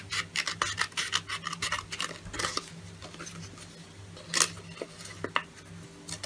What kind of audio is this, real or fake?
real